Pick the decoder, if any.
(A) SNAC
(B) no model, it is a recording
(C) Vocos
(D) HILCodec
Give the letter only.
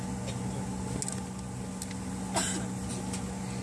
B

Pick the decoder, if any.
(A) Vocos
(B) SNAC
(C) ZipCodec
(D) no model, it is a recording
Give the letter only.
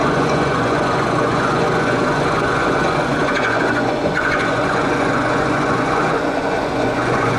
A